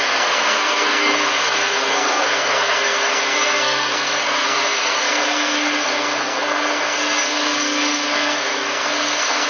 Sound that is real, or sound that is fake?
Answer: fake